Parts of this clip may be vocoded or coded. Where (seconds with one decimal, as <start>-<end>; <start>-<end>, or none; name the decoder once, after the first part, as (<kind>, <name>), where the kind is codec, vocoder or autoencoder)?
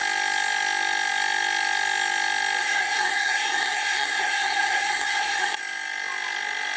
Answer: 2.6-5.6 (codec, SNAC)